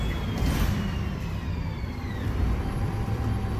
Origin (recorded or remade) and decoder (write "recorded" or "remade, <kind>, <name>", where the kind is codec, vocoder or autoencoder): remade, vocoder, BigVGAN v2